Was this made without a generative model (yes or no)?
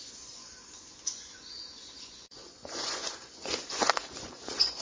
no